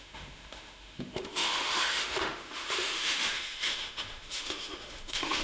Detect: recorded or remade remade